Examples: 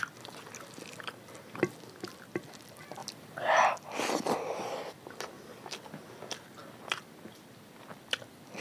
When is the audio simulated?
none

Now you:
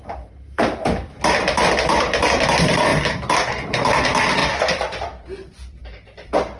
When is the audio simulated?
4.4-5.8 (vocoder, BigVGAN v2)

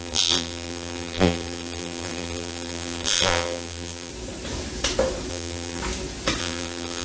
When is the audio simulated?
0.0-4.1 (vocoder, BigVGAN v2); 5.3-5.8; 6.4-7.0